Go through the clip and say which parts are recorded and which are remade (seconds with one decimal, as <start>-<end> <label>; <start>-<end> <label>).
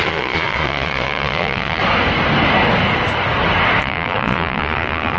0.0-1.8 remade; 1.8-3.8 recorded; 3.8-5.2 remade